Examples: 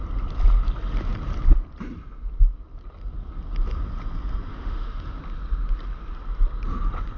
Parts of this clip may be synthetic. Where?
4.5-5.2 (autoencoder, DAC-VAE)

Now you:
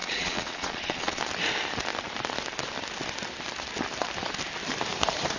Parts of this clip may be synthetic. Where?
0.0-1.2 (vocoder, Vocos)

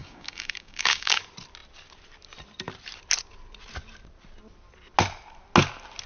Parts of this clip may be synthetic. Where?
0.0-1.2 (codec, DAC)

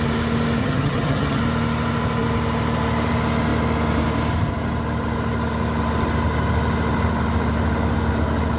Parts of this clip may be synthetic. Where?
0.6-1.4 (vocoder, HiFi-GAN)

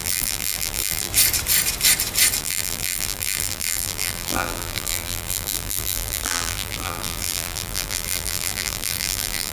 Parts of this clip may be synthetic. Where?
0.0-1.1 (vocoder, BigVGAN v2); 2.4-9.5